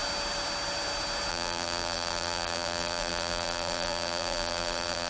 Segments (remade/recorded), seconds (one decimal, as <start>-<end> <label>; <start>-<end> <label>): 0.0-1.3 recorded; 1.3-5.1 remade